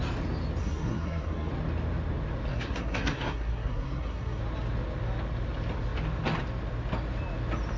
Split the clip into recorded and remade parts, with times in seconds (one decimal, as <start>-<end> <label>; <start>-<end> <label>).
0.0-0.6 recorded; 0.6-1.5 remade; 1.5-2.5 recorded; 2.5-4.4 remade; 4.4-7.8 recorded